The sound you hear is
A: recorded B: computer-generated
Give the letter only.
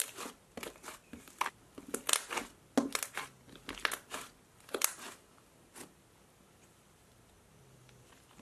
A